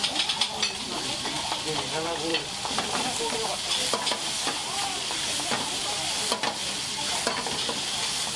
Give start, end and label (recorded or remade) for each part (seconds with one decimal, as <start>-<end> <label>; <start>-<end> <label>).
0.0-2.3 recorded; 2.3-3.2 remade; 3.2-4.6 recorded; 4.6-5.9 remade; 5.9-8.4 recorded